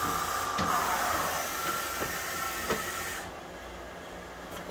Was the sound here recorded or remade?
recorded